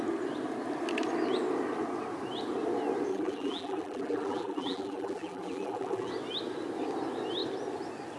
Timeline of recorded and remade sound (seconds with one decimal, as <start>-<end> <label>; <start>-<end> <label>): 0.0-3.1 recorded; 3.1-6.1 remade; 6.1-8.2 recorded